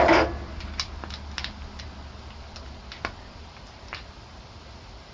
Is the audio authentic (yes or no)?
yes